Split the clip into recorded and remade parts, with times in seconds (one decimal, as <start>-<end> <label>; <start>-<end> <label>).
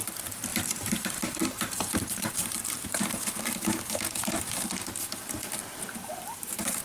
0.0-0.5 recorded; 0.5-3.4 remade; 3.4-6.0 recorded; 6.0-6.8 remade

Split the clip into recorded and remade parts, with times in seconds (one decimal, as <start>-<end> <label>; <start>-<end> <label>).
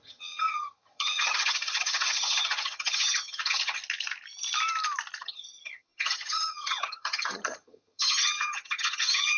0.0-3.8 remade; 3.8-5.2 recorded; 5.2-9.4 remade